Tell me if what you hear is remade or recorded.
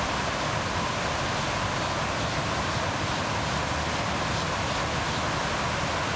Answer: recorded